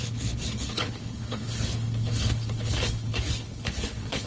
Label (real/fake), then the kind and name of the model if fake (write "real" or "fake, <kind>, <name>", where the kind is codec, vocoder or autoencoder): fake, codec, HILCodec